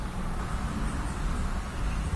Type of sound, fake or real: real